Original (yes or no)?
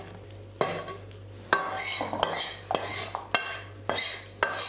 yes